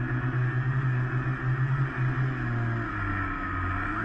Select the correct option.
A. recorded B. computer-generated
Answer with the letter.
A